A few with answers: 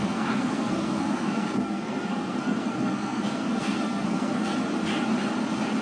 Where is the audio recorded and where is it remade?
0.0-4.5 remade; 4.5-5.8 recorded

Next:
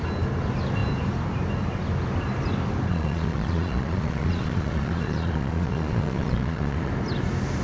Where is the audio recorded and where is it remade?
0.0-2.9 recorded; 2.9-6.9 remade; 6.9-7.6 recorded

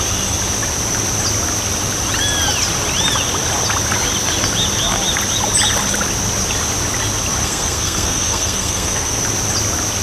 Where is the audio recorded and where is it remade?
0.0-7.4 recorded; 7.4-9.2 remade; 9.2-10.0 recorded